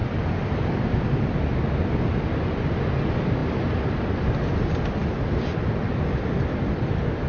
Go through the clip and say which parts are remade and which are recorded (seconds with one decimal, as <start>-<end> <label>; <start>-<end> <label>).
0.0-7.3 recorded